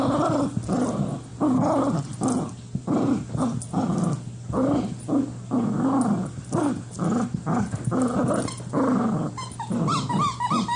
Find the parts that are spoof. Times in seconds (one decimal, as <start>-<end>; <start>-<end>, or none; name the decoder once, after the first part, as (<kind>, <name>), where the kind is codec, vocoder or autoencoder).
none